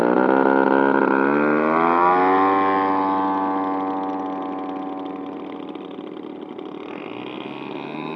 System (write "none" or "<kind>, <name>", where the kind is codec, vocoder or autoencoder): none